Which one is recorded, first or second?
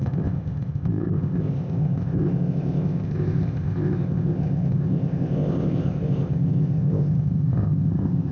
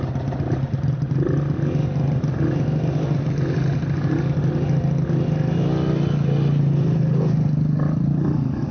second